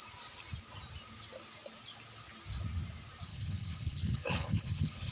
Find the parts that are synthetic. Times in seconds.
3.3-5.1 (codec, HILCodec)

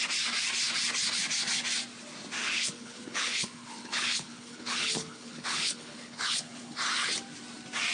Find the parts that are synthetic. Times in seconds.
2.4-7.1 (codec, HILCodec)

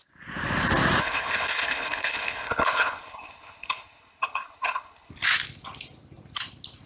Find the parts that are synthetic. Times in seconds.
1.0-5.1 (codec, HILCodec)

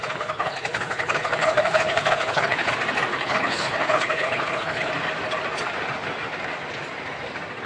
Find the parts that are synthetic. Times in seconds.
0.0-2.7 (codec, HILCodec); 3.1-4.9

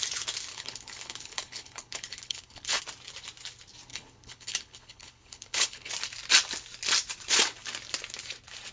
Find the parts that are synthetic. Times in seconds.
0.5-2.8 (codec, HILCodec); 3.9-5.9